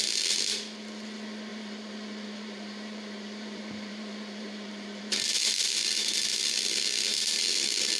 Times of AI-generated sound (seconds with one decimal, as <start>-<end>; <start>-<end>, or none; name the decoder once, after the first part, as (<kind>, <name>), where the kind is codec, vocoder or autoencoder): 1.5-5.2 (vocoder, BigVGAN v2)